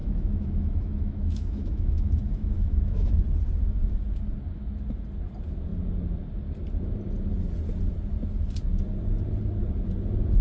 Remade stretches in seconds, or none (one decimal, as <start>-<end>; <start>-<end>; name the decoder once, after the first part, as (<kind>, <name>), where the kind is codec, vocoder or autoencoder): 0.0-3.2 (autoencoder, DAC-VAE)